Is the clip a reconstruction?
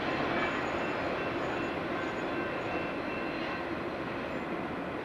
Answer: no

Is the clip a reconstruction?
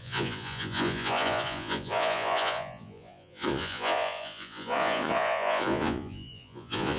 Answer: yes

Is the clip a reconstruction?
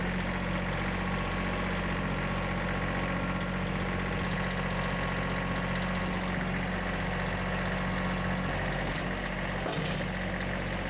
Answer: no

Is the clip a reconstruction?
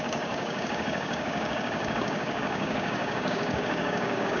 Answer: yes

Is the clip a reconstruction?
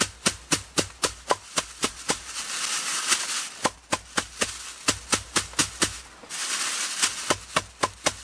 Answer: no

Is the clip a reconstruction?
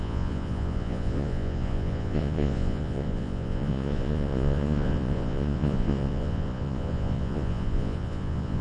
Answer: yes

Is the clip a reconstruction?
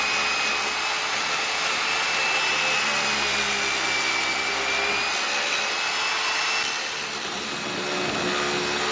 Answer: no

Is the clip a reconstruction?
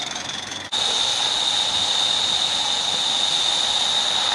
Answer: no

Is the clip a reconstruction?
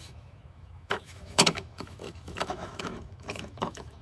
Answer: yes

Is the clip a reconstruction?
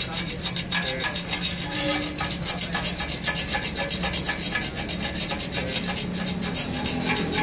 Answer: no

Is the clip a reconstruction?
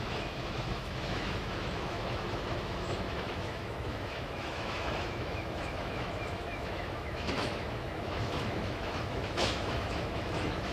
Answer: yes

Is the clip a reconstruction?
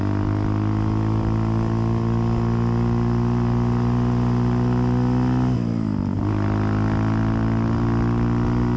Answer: no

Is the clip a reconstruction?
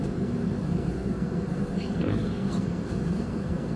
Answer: yes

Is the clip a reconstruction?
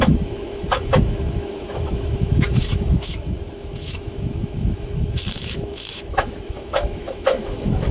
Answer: yes